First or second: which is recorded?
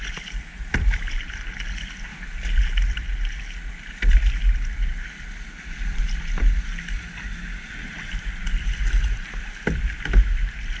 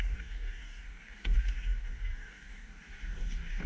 first